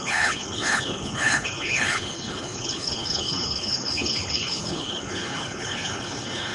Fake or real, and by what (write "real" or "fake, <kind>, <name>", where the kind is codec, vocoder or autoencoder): fake, codec, HILCodec